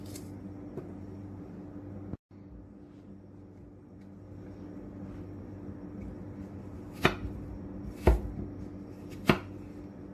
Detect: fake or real real